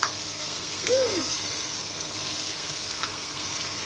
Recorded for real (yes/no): no